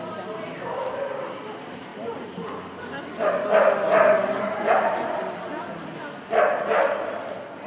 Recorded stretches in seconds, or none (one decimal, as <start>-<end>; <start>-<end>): 0.0-7.7

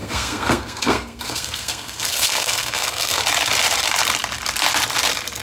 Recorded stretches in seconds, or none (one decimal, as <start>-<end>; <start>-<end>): 3.2-5.4